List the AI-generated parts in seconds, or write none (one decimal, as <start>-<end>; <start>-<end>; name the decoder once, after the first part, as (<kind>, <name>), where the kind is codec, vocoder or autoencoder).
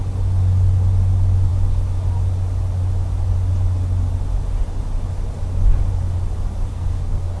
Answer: 6.7-7.4 (codec, SNAC)